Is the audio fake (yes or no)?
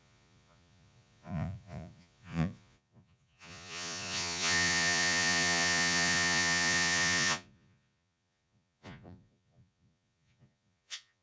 yes